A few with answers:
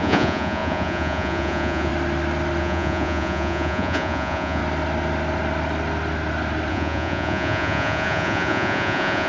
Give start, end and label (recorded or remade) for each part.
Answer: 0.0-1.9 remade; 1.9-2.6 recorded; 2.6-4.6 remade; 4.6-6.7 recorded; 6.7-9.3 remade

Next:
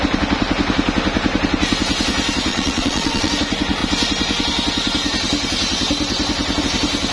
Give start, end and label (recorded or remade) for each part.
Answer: 0.0-2.5 recorded; 2.5-3.3 remade; 3.3-7.1 recorded

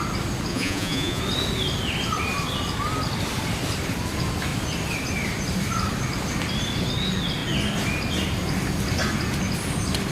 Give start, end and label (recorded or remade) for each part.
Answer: 0.0-0.5 recorded; 0.5-1.2 remade; 1.2-10.1 recorded

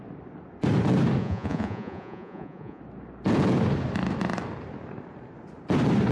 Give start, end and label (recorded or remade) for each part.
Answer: 0.0-1.2 recorded; 1.2-2.8 remade; 2.8-6.1 recorded

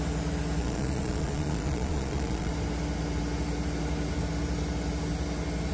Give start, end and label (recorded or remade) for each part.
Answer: 0.0-0.6 recorded; 0.6-2.5 remade; 2.5-5.7 recorded

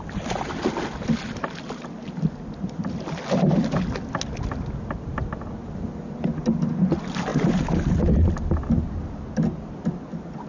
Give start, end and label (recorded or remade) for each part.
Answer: 0.0-10.5 recorded

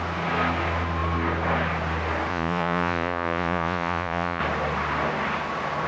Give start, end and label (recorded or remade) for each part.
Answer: 0.0-2.3 recorded; 2.3-4.4 remade; 4.4-5.9 recorded

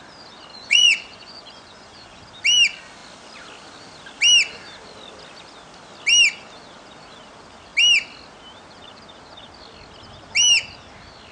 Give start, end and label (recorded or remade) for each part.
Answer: 0.0-0.5 recorded; 0.5-2.2 remade; 2.2-11.3 recorded